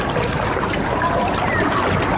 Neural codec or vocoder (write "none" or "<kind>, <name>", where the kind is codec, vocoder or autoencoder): none